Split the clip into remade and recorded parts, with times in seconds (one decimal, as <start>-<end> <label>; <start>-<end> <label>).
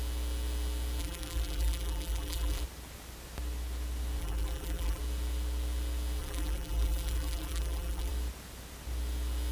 0.0-1.0 recorded; 1.0-2.6 remade; 2.6-4.2 recorded; 4.2-5.0 remade; 5.0-6.2 recorded; 6.2-8.1 remade; 8.1-9.5 recorded